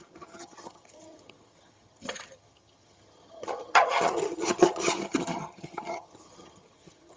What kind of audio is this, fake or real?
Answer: fake